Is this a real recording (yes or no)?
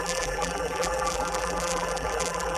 no